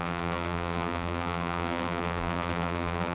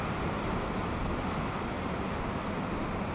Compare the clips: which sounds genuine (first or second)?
second